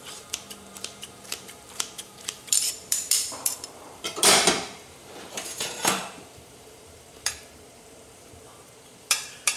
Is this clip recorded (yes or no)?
no